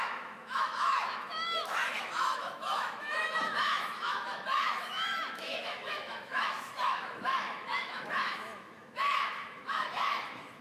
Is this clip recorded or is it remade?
remade